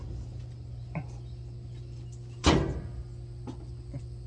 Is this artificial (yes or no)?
no